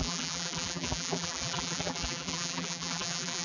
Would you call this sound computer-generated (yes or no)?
yes